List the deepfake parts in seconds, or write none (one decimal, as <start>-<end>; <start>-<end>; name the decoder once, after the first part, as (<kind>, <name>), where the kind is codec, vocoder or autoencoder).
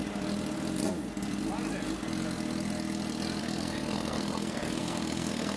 3.4-5.6 (codec, SNAC)